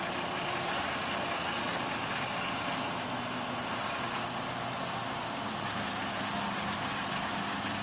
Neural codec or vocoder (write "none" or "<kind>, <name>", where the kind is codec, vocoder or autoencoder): none